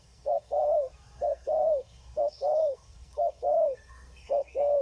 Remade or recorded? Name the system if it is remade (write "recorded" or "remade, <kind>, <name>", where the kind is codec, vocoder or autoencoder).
remade, codec, SNAC